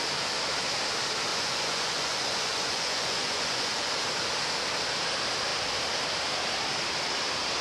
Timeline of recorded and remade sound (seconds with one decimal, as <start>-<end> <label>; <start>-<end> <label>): 0.0-1.3 recorded; 1.3-3.9 remade; 3.9-7.6 recorded

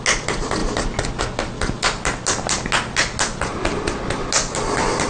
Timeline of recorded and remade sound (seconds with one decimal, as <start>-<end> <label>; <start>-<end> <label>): 0.0-5.1 recorded

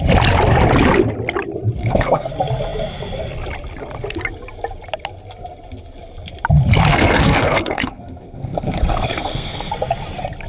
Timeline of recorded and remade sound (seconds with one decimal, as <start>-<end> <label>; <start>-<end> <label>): 0.0-1.8 recorded; 1.8-2.3 remade; 2.3-6.9 recorded; 6.9-9.7 remade; 9.7-10.5 recorded

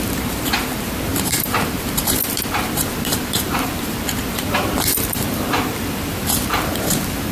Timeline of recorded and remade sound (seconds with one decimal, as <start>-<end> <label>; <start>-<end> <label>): 0.0-7.3 remade

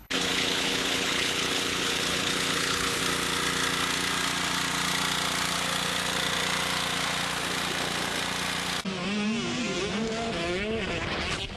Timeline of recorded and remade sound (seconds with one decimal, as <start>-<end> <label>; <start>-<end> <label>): 0.0-3.0 remade; 3.0-11.6 recorded